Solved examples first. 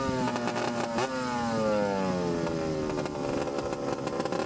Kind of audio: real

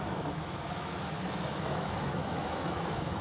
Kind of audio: fake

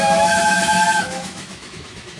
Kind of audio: fake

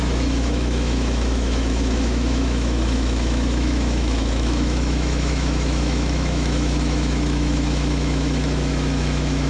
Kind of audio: fake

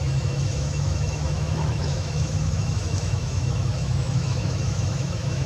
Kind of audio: fake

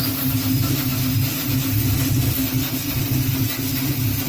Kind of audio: real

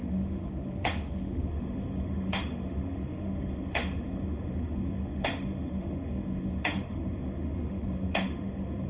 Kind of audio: fake